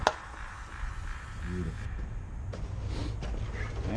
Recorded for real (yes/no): yes